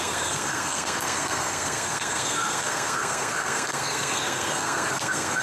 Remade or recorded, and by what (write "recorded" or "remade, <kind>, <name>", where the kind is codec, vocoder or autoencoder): remade, codec, SNAC